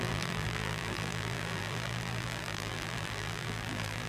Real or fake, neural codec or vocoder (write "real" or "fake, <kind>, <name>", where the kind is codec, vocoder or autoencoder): fake, vocoder, BigVGAN v2